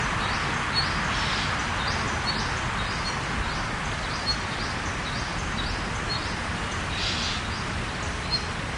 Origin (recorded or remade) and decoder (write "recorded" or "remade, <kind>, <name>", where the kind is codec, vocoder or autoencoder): recorded